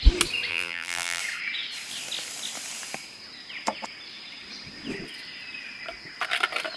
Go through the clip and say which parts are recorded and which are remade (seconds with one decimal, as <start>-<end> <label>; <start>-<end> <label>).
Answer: 0.0-0.5 recorded; 0.5-1.2 remade; 1.2-6.8 recorded